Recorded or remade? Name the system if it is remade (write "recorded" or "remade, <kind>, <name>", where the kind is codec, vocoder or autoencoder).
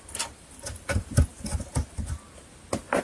recorded